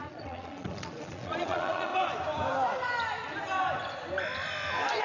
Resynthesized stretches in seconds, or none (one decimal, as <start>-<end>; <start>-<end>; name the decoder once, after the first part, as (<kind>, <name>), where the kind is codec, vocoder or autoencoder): 0.0-1.9 (vocoder, Vocos)